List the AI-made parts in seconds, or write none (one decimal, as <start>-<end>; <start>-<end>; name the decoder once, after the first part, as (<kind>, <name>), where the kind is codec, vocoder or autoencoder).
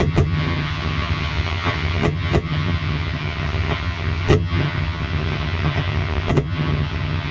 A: 0.0-7.3 (vocoder, HiFi-GAN)